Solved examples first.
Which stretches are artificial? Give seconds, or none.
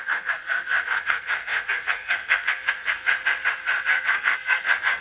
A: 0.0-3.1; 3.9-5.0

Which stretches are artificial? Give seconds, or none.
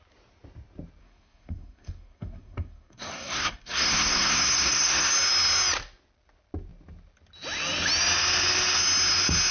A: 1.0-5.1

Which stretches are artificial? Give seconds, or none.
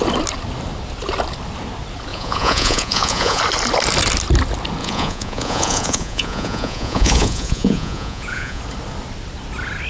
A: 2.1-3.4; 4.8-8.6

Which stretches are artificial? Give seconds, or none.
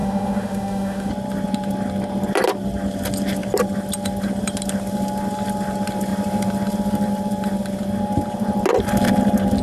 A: 0.0-1.1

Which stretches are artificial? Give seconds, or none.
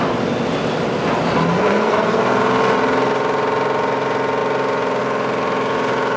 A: 1.5-2.2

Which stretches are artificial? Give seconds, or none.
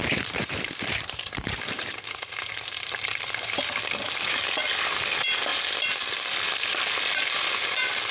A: 0.0-4.4